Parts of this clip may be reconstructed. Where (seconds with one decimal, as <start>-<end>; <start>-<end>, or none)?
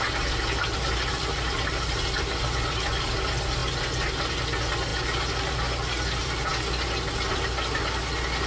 none